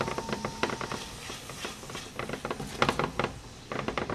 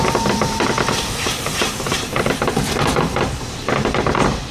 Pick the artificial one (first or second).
second